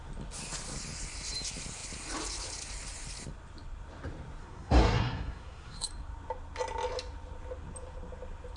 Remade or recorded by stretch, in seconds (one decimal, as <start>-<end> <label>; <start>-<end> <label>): 0.0-4.4 recorded; 4.4-5.9 remade; 5.9-8.6 recorded